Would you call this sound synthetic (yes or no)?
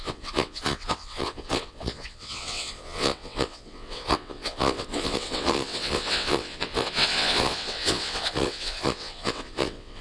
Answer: yes